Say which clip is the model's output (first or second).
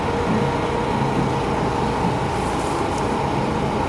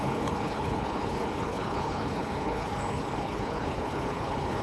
second